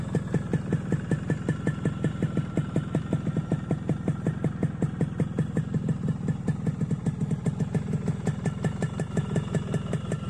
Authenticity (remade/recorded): recorded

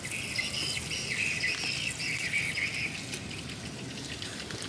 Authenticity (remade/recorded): recorded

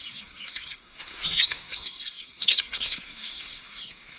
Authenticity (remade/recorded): remade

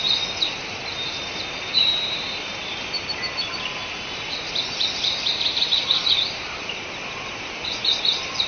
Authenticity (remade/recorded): recorded